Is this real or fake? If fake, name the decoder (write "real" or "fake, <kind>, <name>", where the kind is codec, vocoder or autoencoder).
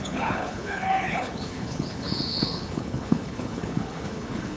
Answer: fake, codec, HILCodec